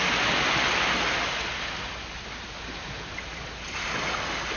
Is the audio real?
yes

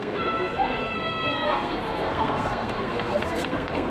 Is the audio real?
no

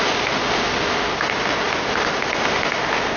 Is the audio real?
yes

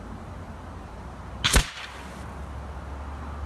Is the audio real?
yes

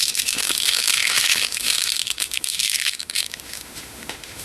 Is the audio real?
no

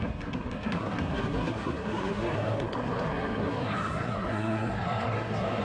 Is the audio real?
no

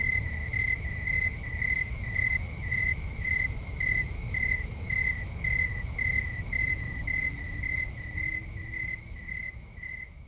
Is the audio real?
no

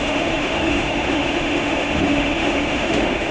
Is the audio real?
no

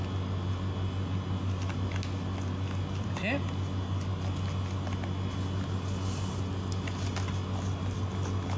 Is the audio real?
yes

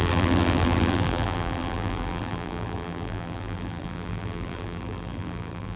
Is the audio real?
no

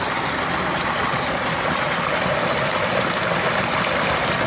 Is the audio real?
yes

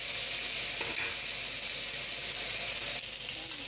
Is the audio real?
yes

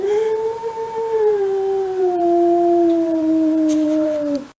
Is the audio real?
no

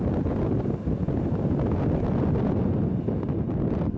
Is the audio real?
yes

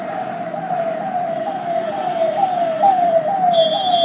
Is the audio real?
no